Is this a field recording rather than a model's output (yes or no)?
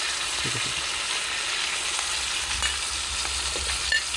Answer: yes